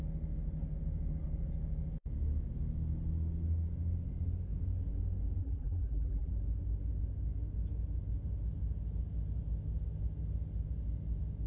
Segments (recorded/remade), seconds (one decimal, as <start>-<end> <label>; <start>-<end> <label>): 0.0-5.4 recorded; 5.4-6.3 remade; 6.3-11.5 recorded